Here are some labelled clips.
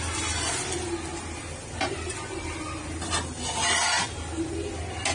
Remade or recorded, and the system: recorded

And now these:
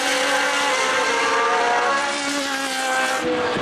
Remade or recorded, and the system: recorded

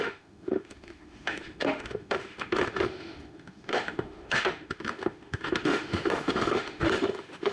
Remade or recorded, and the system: remade, autoencoder, DAC-VAE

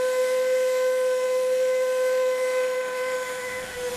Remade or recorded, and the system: remade, autoencoder, DAC-VAE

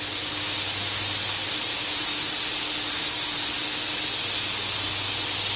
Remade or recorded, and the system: recorded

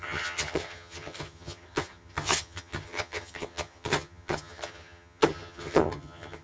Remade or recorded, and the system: remade, vocoder, HiFi-GAN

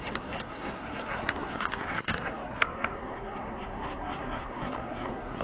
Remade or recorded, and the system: remade, codec, SNAC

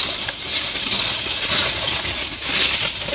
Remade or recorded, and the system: recorded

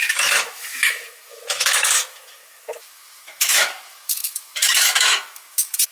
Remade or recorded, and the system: remade, autoencoder, DAC-VAE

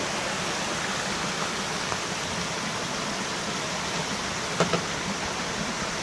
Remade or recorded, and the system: recorded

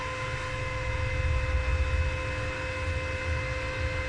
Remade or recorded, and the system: recorded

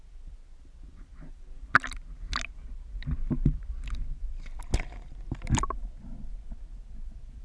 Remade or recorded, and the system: recorded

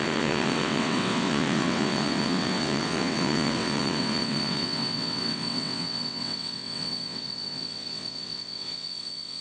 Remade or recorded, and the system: remade, vocoder, WaveNeXt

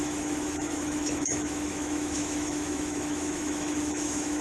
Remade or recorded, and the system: remade, autoencoder, DAC-VAE